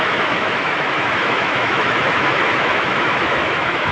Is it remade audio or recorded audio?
remade